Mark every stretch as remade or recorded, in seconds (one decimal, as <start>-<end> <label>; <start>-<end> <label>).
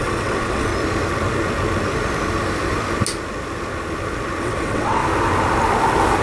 0.0-0.7 remade; 0.7-4.4 recorded; 4.4-5.0 remade; 5.0-6.2 recorded